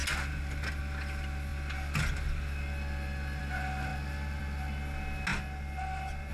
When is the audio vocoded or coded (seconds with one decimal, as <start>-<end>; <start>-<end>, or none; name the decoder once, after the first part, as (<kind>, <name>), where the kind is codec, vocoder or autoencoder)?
none